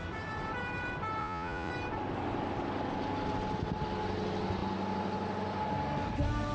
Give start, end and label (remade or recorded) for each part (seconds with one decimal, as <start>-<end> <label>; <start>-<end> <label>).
0.0-1.2 recorded; 1.2-1.7 remade; 1.7-6.5 recorded